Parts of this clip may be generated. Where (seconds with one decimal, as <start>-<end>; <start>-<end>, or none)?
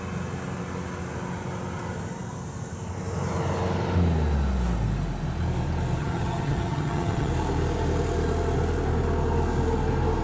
6.0-7.3